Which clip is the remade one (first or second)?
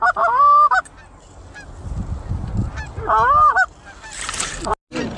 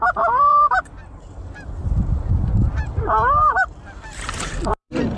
second